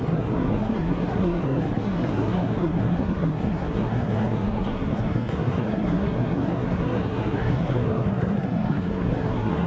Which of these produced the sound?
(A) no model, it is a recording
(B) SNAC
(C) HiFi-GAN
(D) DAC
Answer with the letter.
B